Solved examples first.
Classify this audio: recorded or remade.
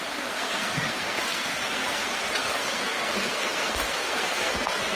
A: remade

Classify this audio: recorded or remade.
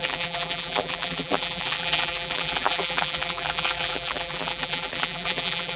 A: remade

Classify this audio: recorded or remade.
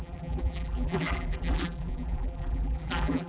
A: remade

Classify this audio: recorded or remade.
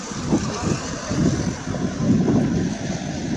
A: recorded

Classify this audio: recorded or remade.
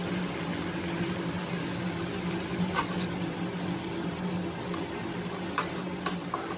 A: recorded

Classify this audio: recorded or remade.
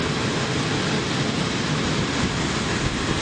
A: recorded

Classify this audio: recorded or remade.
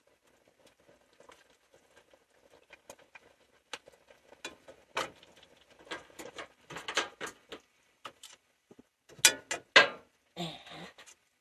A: recorded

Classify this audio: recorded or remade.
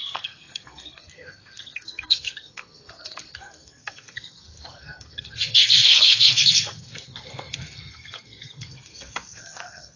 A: remade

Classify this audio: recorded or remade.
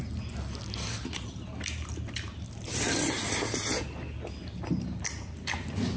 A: recorded